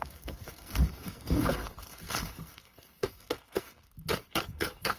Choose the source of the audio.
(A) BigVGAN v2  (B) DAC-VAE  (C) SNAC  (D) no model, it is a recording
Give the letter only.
C